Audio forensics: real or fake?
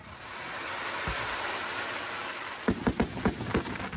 real